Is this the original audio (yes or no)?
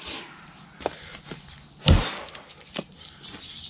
yes